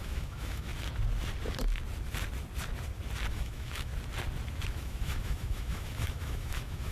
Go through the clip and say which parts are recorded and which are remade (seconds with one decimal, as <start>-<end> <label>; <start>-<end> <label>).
0.0-0.7 remade; 0.7-3.3 recorded; 3.3-3.9 remade; 3.9-4.7 recorded; 4.7-6.9 remade